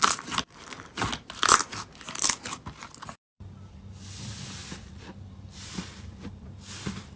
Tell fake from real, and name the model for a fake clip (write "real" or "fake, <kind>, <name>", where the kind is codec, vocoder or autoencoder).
real